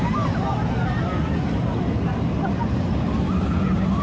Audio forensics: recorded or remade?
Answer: recorded